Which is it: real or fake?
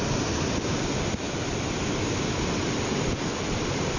real